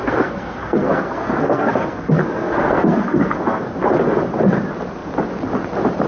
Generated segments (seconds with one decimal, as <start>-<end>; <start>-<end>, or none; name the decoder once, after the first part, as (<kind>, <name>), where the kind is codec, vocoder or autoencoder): 0.0-3.7 (codec, SNAC)